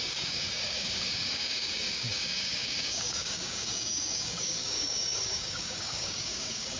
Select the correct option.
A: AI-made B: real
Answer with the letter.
A